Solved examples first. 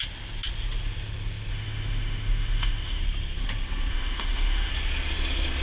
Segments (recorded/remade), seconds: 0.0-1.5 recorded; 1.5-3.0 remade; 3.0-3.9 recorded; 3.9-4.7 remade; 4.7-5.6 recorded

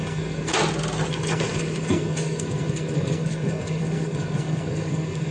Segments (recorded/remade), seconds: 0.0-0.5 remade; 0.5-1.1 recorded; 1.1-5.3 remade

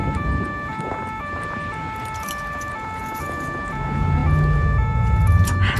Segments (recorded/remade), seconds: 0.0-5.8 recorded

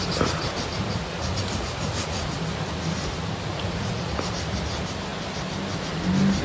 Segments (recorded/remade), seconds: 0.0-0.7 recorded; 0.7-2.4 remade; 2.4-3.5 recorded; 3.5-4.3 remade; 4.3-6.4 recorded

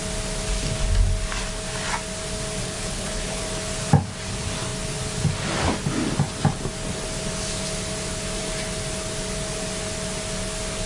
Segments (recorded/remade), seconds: 0.0-2.6 recorded; 2.6-3.4 remade; 3.4-10.9 recorded